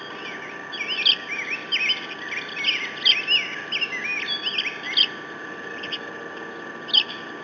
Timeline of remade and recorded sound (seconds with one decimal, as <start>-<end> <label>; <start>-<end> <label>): 0.0-7.4 recorded